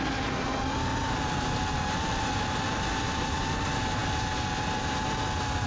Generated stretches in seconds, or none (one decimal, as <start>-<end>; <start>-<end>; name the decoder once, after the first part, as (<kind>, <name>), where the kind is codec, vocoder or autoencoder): none

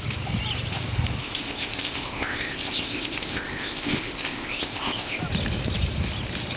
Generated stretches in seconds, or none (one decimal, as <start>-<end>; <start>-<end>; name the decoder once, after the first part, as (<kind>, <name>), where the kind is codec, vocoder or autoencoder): 1.2-5.2 (codec, ZipCodec)

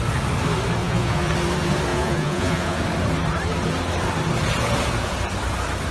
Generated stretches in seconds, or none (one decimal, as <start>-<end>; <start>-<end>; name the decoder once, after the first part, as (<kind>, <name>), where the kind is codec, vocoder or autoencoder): 0.8-1.3 (vocoder, Vocos); 1.9-2.8